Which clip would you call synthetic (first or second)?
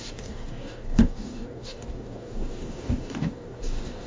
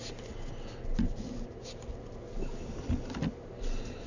first